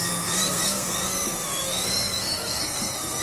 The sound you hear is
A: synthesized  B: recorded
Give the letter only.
A